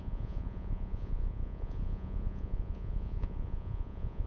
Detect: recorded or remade remade